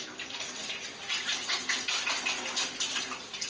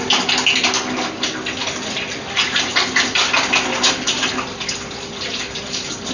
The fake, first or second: first